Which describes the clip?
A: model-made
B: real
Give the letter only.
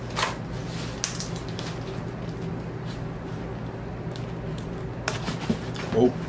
B